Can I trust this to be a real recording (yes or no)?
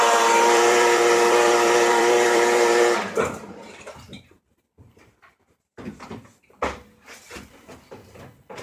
no